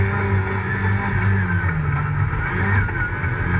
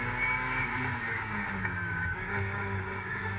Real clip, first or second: first